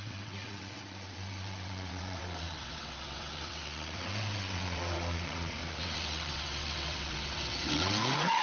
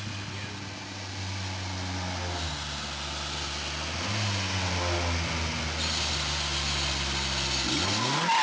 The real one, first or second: second